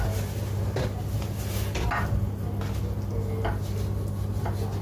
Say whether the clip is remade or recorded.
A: recorded